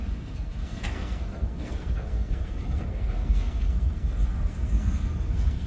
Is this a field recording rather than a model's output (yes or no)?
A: no